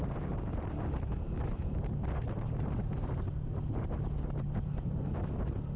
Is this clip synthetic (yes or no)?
no